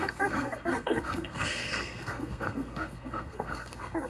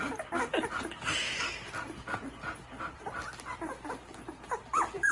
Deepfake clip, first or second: first